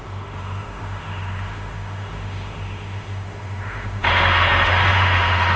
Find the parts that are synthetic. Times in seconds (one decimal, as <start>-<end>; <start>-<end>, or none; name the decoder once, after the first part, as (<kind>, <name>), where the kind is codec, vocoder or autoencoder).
0.0-5.6 (autoencoder, DAC-VAE)

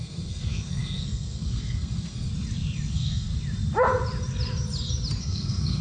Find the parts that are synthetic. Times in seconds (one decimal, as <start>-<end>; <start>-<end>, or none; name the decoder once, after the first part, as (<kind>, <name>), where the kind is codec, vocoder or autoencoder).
0.0-2.3 (codec, SNAC); 2.9-3.3; 5.2-5.8

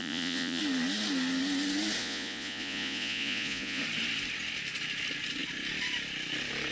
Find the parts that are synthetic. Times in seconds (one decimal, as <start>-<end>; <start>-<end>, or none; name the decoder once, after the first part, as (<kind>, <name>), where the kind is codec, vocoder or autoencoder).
0.0-0.6 (vocoder, Vocos); 2.0-3.8

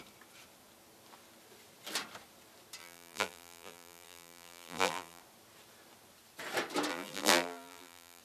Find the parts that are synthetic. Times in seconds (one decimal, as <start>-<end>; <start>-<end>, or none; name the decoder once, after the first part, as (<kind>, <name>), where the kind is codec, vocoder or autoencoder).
2.8-5.2 (vocoder, BigVGAN v2); 6.9-8.2

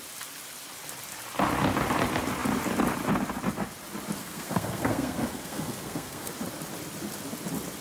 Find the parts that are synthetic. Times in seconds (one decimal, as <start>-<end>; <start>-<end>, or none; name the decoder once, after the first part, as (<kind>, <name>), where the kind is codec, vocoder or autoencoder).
4.2-6.3 (codec, SNAC)

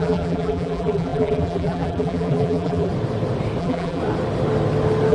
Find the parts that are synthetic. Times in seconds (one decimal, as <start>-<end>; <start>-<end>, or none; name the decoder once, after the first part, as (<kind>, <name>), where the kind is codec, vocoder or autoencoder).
0.0-2.9 (vocoder, BigVGAN v2); 3.6-4.0

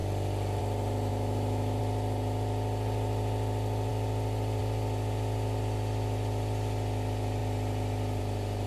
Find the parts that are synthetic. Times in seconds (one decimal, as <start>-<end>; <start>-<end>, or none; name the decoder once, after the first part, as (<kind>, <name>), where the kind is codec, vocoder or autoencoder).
1.1-1.8 (autoencoder, DAC-VAE)